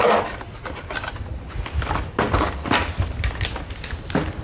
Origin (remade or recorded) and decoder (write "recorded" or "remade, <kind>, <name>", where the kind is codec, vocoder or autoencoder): recorded